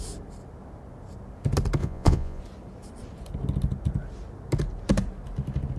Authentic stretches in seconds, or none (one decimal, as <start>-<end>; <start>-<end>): 0.0-1.8; 2.4-5.8